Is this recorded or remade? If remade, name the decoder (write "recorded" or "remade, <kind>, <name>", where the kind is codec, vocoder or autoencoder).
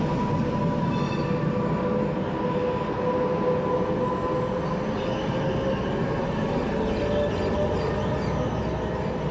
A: recorded